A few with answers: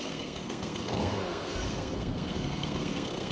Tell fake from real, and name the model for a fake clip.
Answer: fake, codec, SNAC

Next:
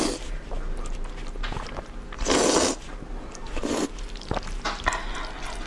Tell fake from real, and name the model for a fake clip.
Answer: real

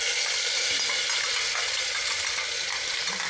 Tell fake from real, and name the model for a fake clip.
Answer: real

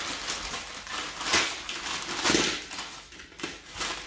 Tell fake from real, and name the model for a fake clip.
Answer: real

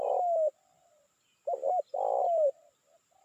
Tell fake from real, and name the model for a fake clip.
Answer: real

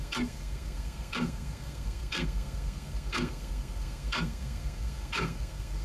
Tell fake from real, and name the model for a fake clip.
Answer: fake, codec, SNAC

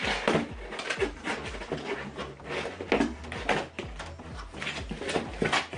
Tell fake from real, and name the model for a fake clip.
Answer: real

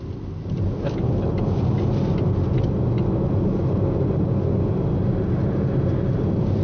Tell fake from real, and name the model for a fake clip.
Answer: real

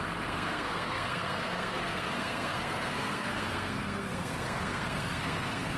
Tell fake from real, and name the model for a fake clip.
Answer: fake, codec, SNAC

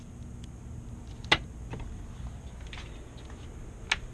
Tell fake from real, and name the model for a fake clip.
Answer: real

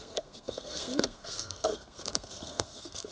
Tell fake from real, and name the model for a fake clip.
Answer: fake, codec, SNAC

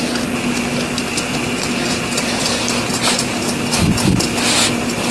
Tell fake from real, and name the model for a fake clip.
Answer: real